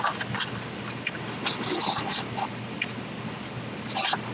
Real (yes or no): yes